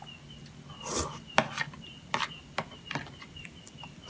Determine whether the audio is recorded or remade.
recorded